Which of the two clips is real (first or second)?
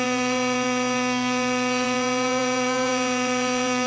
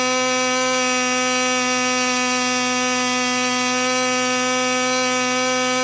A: second